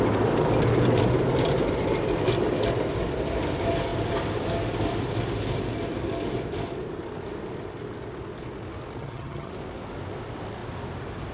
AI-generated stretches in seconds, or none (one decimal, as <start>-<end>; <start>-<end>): 9.0-9.5